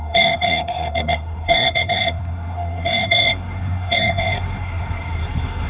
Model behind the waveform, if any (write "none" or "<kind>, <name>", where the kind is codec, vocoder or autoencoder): codec, SNAC